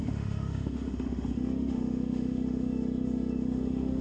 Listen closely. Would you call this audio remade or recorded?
remade